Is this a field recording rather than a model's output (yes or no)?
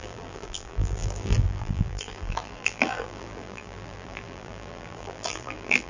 no